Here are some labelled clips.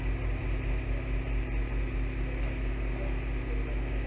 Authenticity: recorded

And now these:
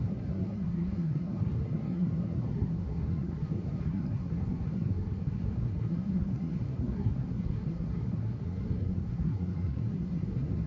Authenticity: remade